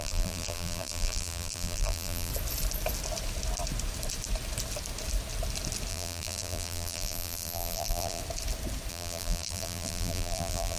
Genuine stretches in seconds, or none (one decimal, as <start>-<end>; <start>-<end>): 2.3-5.9; 8.2-8.9